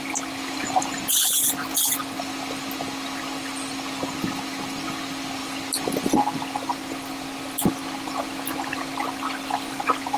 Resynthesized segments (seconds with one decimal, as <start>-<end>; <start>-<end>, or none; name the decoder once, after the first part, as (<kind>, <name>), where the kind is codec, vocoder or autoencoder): none